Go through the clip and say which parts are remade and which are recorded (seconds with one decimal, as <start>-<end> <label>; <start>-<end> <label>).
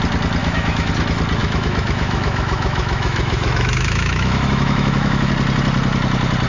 0.0-0.4 recorded; 0.4-0.9 remade; 0.9-1.4 recorded; 1.4-5.3 remade; 5.3-6.5 recorded